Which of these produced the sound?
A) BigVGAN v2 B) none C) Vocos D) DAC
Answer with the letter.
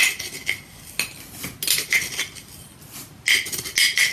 B